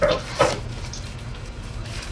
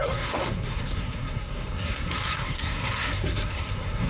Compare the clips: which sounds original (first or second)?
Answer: first